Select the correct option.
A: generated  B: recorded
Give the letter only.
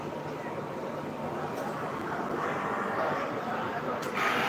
B